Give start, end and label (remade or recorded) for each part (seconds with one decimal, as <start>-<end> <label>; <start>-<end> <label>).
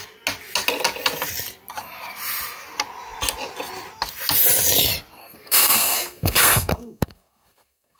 0.0-5.2 recorded; 5.2-8.0 remade